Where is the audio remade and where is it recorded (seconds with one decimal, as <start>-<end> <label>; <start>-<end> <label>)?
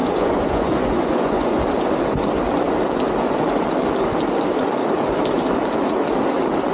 0.0-1.6 remade; 1.6-6.7 recorded